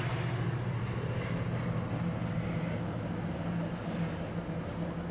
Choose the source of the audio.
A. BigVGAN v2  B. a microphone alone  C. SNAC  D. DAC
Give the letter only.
B